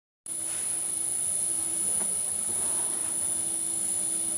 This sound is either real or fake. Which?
real